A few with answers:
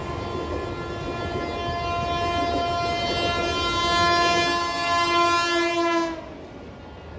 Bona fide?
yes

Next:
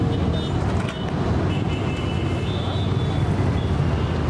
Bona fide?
yes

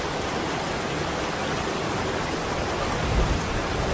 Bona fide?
yes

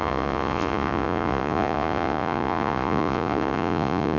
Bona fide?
no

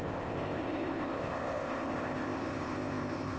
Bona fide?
no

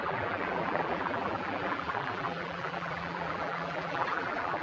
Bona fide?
no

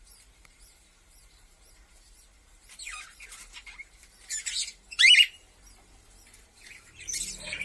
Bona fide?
no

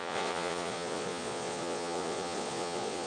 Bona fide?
no